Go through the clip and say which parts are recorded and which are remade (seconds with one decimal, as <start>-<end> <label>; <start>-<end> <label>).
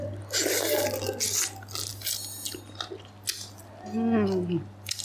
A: 0.0-5.0 recorded